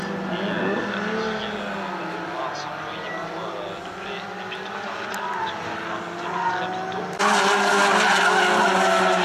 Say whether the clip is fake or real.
real